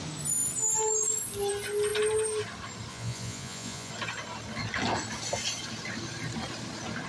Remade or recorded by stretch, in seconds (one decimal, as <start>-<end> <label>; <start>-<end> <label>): 0.0-2.9 recorded; 2.9-3.9 remade; 3.9-7.1 recorded